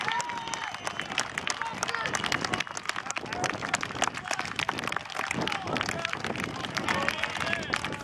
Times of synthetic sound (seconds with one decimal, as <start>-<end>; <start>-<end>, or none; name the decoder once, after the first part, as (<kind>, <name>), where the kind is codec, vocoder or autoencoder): none